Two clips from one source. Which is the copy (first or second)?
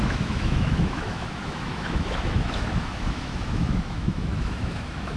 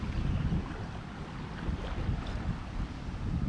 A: first